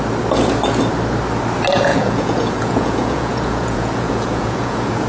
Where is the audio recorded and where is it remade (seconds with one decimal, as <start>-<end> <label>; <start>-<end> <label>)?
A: 0.0-1.9 recorded; 1.9-5.1 remade